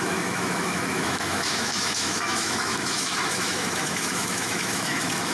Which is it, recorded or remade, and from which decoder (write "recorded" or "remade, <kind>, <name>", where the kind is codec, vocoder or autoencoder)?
remade, autoencoder, DAC-VAE